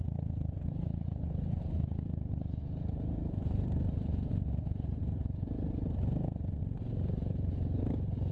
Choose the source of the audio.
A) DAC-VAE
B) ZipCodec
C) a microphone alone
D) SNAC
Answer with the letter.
C